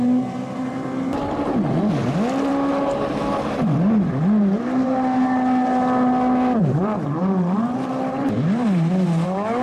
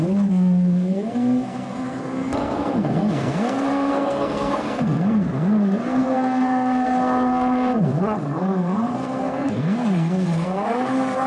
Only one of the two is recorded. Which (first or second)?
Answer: first